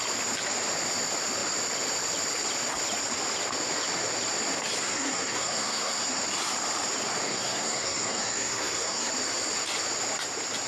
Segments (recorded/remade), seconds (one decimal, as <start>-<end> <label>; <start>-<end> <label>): 0.0-4.8 recorded; 4.8-6.2 remade; 6.2-7.3 recorded; 7.3-9.1 remade; 9.1-10.7 recorded